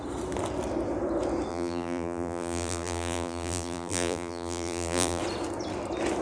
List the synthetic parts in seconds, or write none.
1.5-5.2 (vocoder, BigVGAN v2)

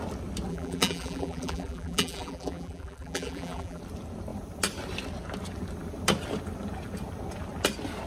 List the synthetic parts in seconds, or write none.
0.5-3.8 (vocoder, BigVGAN v2)

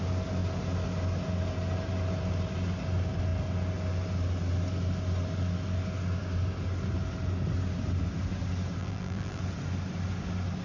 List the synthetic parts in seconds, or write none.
8.8-9.4 (vocoder, BigVGAN v2)